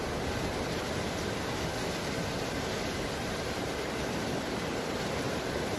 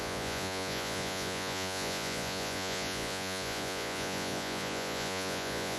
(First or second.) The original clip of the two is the first